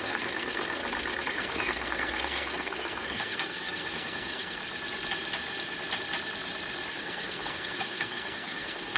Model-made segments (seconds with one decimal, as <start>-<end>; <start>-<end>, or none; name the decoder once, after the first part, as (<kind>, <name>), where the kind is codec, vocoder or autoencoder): 0.0-0.8 (codec, SNAC); 1.3-4.6; 6.9-9.0